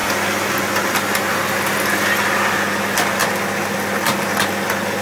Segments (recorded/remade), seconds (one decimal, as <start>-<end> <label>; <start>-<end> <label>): 0.0-5.0 recorded